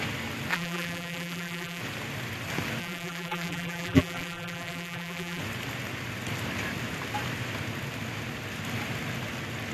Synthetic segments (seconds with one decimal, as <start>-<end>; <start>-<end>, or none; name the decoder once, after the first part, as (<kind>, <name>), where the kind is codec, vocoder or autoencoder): 0.5-1.8 (vocoder, BigVGAN v2); 2.8-5.4